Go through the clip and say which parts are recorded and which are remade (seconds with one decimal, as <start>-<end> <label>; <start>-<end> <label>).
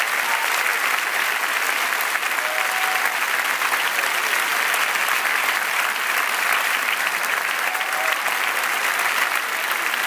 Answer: 0.0-0.7 remade; 0.7-3.7 recorded; 3.7-10.1 remade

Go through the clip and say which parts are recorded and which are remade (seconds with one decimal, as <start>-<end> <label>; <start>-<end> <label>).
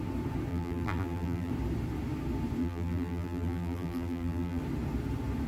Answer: 0.0-0.5 recorded; 0.5-1.5 remade; 1.5-2.6 recorded; 2.6-4.6 remade; 4.6-5.5 recorded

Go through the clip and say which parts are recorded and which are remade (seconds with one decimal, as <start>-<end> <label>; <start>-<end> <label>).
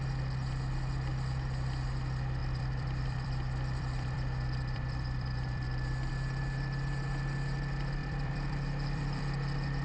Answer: 0.0-2.4 recorded; 2.4-6.1 remade; 6.1-8.0 recorded; 8.0-9.2 remade; 9.2-9.8 recorded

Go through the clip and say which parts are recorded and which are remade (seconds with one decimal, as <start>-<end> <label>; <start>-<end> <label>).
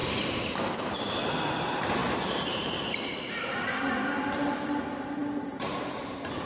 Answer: 0.0-0.9 recorded; 0.9-6.5 remade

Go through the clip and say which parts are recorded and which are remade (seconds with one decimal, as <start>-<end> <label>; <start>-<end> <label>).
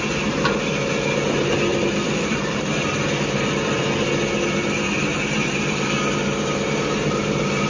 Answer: 0.0-1.7 recorded; 1.7-3.8 remade; 3.8-7.7 recorded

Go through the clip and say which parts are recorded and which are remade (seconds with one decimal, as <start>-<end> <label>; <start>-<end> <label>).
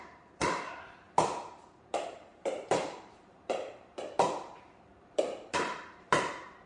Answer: 0.0-6.7 remade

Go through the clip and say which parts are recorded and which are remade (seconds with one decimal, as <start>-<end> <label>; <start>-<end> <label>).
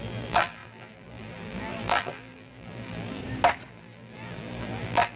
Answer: 0.0-3.2 remade; 3.2-3.7 recorded; 3.7-5.2 remade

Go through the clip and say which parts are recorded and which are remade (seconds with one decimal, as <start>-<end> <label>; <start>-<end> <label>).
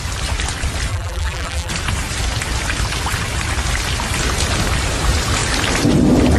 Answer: 0.0-0.9 recorded; 0.9-1.7 remade; 1.7-6.4 recorded